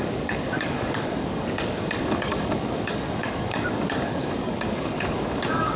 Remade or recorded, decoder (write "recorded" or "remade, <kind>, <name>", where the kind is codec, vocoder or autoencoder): remade, codec, DAC